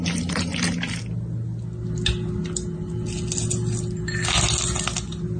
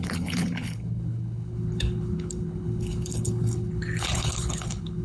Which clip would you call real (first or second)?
first